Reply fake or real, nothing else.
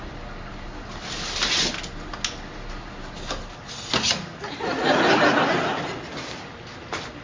real